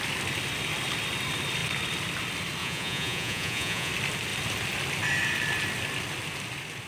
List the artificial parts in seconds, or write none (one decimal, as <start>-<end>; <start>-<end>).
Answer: 2.6-3.9